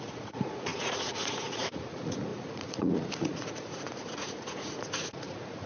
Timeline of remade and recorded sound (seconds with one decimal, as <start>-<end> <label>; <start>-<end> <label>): 0.0-5.7 remade

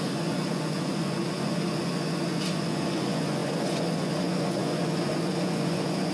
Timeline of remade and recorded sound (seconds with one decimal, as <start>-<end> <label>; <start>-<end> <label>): 0.0-6.1 remade

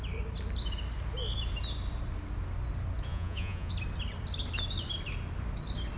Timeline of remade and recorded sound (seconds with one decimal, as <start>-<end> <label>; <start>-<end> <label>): 0.0-3.1 recorded; 3.1-3.7 remade; 3.7-6.0 recorded

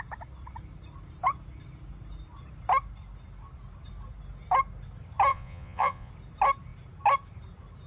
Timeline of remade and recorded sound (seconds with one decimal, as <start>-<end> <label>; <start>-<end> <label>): 0.0-5.3 recorded; 5.3-6.1 remade; 6.1-7.9 recorded

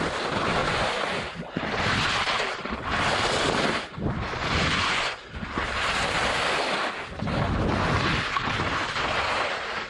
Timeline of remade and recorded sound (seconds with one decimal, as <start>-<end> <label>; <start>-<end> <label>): 0.0-0.6 recorded; 0.6-1.2 remade; 1.2-4.4 recorded; 4.4-5.4 remade; 5.4-9.9 recorded

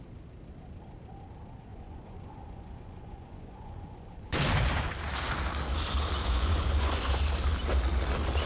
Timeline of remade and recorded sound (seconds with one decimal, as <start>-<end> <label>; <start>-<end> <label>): 0.0-1.7 recorded; 1.7-4.4 remade; 4.4-6.2 recorded; 6.2-7.2 remade; 7.2-8.5 recorded

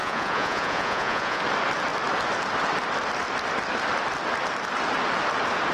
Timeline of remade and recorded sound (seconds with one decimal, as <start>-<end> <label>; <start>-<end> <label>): 0.0-1.4 remade; 1.4-5.7 recorded

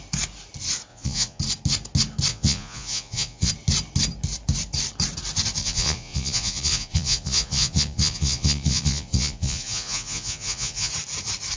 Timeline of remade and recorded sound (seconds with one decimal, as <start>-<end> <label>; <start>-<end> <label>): 0.0-0.9 recorded; 0.9-1.4 remade; 1.4-2.3 recorded; 2.3-3.5 remade; 3.5-5.6 recorded; 5.6-10.9 remade; 10.9-11.6 recorded